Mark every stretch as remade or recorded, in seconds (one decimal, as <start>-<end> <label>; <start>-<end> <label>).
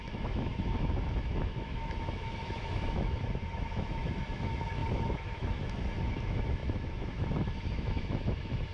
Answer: 0.0-8.7 remade